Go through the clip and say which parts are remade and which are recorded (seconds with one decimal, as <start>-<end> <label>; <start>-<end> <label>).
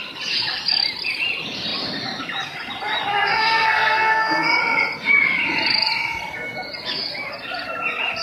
0.0-3.1 recorded; 3.1-4.6 remade; 4.6-8.2 recorded